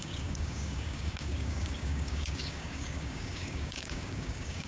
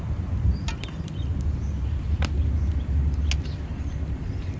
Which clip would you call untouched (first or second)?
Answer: second